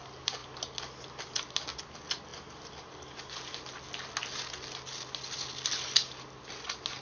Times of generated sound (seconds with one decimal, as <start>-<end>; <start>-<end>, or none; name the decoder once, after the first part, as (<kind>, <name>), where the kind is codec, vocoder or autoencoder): none

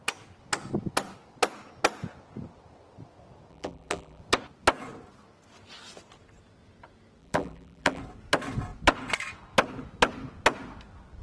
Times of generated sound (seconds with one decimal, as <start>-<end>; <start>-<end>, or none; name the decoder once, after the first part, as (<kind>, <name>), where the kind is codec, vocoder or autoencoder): 3.5-4.2 (vocoder, BigVGAN v2); 7.2-8.0